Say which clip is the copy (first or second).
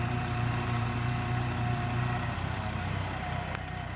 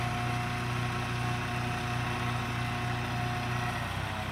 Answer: first